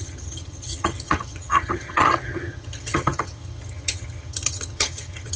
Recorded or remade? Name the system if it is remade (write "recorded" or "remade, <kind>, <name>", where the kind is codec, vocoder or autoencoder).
remade, vocoder, HiFi-GAN